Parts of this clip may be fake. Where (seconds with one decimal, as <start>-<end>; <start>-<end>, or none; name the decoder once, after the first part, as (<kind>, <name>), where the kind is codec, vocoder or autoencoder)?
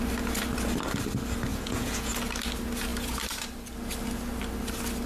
1.5-2.1 (vocoder, Vocos)